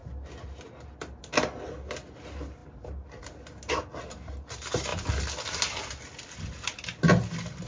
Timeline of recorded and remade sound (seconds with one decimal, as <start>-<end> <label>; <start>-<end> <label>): 0.0-7.7 recorded